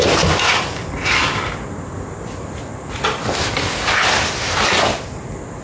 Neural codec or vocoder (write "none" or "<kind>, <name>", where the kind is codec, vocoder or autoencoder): none